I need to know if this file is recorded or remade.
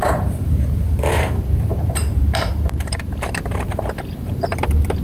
remade